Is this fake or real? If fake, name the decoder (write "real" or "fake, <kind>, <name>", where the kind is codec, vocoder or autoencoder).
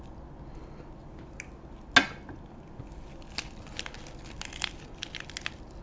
real